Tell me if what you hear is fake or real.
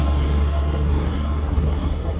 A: fake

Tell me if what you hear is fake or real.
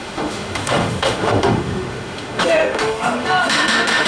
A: fake